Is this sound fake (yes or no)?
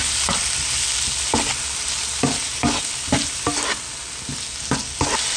no